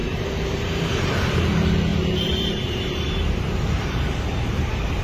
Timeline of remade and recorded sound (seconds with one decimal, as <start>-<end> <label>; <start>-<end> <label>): 0.0-1.4 remade; 1.4-1.9 recorded; 1.9-5.0 remade